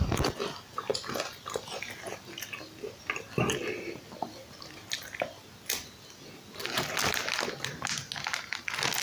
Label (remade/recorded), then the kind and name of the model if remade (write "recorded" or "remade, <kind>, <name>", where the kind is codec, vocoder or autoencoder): recorded